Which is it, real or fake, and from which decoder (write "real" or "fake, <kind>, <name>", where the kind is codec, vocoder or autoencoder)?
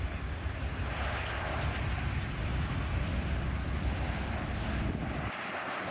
real